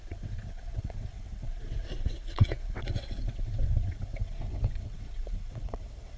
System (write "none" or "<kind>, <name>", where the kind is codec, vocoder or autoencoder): vocoder, WaveNeXt